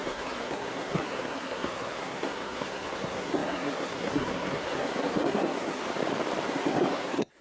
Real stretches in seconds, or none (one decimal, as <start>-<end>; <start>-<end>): 5.8-6.5